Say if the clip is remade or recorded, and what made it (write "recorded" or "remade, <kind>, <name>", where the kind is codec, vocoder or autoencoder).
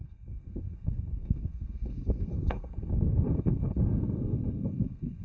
remade, codec, SNAC